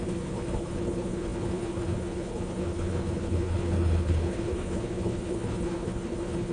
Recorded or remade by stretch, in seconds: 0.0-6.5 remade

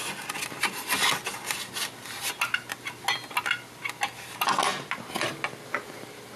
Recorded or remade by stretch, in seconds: 0.0-6.4 recorded

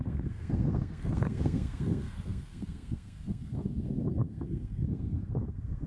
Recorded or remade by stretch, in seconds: 0.0-5.9 remade

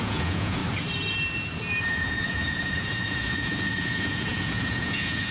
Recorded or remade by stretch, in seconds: 0.0-0.6 remade; 0.6-1.9 recorded; 1.9-5.3 remade

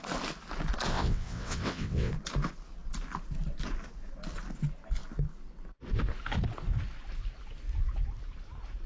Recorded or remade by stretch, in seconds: 0.0-0.9 recorded; 0.9-2.1 remade; 2.1-8.9 recorded

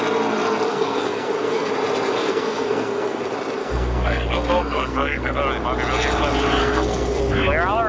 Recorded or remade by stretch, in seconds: 0.0-0.7 recorded; 0.7-1.7 remade; 1.7-2.2 recorded; 2.2-3.2 remade; 3.2-3.6 recorded; 3.6-5.4 remade; 5.4-6.6 recorded; 6.6-7.2 remade; 7.2-7.9 recorded